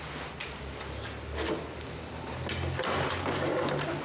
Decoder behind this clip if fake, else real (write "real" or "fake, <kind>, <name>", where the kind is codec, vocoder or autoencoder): real